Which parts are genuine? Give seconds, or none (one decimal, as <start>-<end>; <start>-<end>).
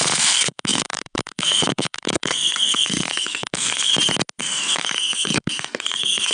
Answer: 3.9-4.4